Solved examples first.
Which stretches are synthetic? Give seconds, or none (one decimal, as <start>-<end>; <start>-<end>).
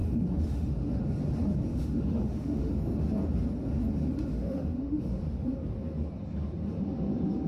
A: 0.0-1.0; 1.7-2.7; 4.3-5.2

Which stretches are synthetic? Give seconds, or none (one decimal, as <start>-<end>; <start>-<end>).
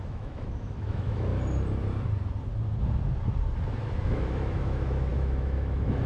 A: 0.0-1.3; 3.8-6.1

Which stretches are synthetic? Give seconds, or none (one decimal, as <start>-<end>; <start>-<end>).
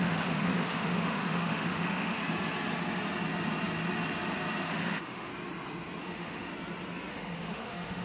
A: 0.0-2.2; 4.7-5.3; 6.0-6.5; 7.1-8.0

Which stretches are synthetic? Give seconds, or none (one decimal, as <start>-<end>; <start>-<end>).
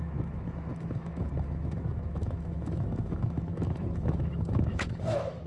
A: 0.0-5.5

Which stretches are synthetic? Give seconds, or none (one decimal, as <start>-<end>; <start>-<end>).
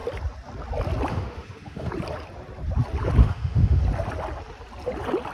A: 1.1-1.9; 3.2-3.8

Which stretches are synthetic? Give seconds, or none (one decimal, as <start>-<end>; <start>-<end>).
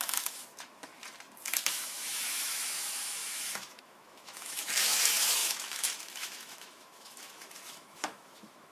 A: 0.0-0.9; 1.7-8.7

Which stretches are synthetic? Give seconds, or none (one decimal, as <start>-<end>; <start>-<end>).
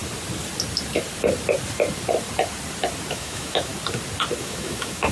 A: 3.1-3.7; 4.4-5.1